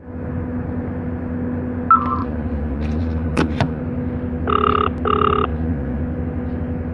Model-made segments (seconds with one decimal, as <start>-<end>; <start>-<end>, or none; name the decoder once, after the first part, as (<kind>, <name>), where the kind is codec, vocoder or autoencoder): 2.2-3.8 (vocoder, Vocos); 5.5-6.0